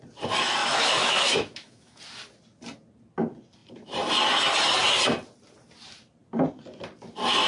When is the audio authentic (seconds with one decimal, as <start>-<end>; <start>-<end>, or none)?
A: 0.0-0.6; 2.0-7.5